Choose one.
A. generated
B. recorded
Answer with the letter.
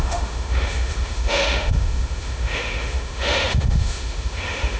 A